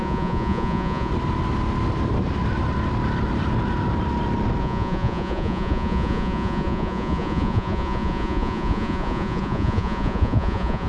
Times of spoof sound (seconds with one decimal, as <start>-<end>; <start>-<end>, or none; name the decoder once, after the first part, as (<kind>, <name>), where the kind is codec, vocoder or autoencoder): 0.0-1.1 (vocoder, Vocos); 4.6-10.9